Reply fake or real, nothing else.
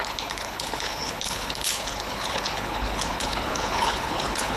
fake